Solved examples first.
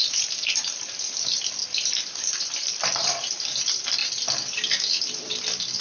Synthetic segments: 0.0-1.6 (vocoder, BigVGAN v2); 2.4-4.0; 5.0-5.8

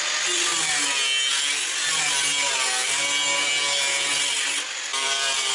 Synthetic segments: 4.9-5.5 (vocoder, BigVGAN v2)

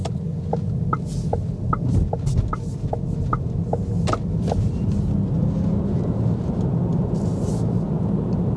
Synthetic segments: 6.9-7.5 (vocoder, BigVGAN v2)

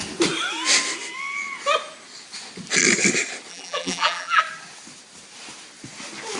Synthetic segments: 3.5-4.4 (vocoder, BigVGAN v2)

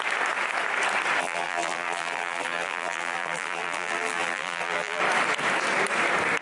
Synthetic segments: 1.2-5.0 (vocoder, BigVGAN v2)

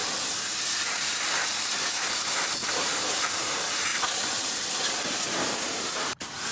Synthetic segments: 0.0-6.5 (vocoder, BigVGAN v2)